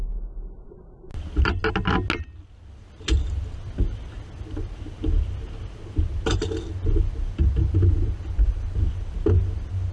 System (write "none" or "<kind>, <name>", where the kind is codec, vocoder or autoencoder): none